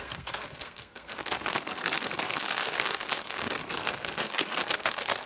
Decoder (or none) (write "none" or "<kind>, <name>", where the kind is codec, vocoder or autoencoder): codec, SNAC